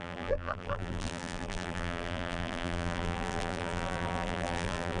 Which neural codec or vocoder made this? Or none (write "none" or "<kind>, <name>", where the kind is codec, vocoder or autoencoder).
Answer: vocoder, BigVGAN v2